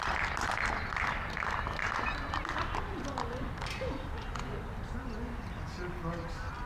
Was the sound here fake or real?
real